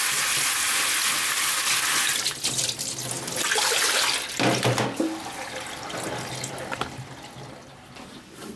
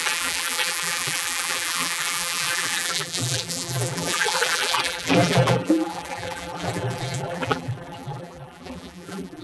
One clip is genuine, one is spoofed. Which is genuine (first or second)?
first